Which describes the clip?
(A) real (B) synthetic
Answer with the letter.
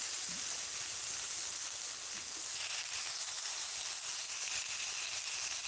A